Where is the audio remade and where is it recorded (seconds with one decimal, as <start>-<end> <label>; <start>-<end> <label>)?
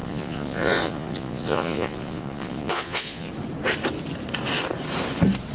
0.0-3.3 remade; 3.3-5.5 recorded